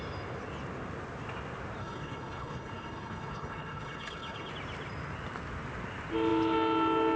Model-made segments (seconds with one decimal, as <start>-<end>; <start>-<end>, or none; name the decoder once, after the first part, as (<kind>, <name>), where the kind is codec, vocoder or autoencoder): 1.8-4.5 (codec, HILCodec)